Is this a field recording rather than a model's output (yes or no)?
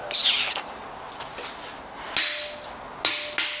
yes